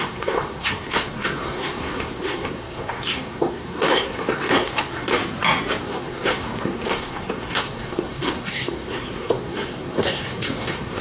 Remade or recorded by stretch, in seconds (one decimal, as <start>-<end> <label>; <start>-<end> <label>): 0.0-5.2 remade; 5.2-5.8 recorded; 5.8-11.0 remade

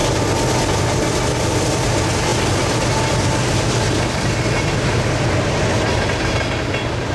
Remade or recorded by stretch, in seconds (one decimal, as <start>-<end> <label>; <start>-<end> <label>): 0.0-7.1 recorded

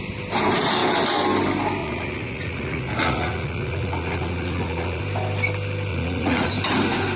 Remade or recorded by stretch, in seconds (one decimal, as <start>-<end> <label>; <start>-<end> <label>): 0.0-1.8 recorded; 1.8-5.0 remade; 5.0-5.9 recorded; 5.9-6.5 remade; 6.5-7.2 recorded

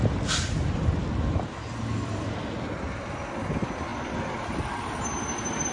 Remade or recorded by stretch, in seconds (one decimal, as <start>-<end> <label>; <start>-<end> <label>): 0.0-5.7 recorded